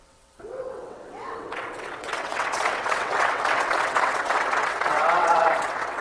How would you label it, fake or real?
fake